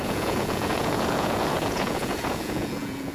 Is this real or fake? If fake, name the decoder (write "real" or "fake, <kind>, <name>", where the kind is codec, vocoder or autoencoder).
fake, vocoder, Vocos